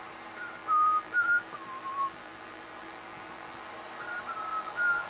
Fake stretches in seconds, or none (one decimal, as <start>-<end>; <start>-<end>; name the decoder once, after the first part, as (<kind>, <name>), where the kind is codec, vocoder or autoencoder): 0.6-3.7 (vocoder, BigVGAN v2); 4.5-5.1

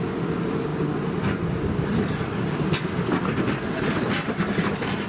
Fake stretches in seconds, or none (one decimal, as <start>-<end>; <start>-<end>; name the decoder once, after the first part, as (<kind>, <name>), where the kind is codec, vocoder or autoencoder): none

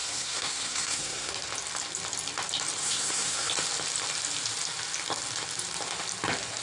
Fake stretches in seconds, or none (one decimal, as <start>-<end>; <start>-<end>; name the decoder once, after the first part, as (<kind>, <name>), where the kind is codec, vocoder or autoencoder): 0.0-1.3 (codec, SNAC); 2.8-3.5

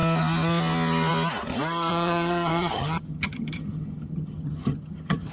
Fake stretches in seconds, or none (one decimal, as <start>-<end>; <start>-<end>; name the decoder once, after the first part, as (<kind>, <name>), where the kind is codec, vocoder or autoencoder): 1.9-5.3 (vocoder, HiFi-GAN)

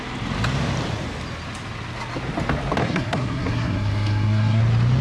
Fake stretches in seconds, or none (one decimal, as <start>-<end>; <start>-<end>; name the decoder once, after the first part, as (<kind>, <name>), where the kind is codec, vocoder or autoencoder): 2.8-4.6 (codec, SNAC)

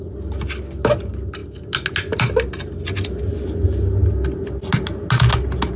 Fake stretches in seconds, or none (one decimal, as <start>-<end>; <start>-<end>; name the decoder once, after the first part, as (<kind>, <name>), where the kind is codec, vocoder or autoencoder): none